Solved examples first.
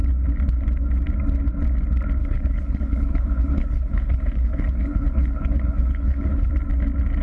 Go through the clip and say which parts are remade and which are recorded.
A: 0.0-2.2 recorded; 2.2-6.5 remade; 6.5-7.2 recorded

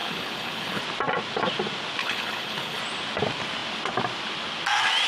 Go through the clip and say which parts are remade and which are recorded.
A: 0.0-0.8 remade; 0.8-2.0 recorded; 2.0-2.8 remade; 2.8-5.1 recorded

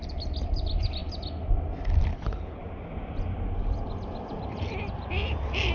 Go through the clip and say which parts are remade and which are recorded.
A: 0.0-2.1 recorded; 2.1-2.6 remade; 2.6-5.7 recorded

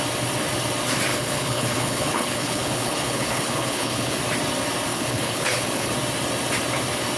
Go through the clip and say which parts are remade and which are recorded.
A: 0.0-1.1 recorded; 1.1-4.2 remade; 4.2-4.9 recorded; 4.9-5.9 remade; 5.9-7.2 recorded